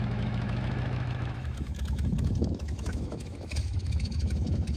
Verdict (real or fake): fake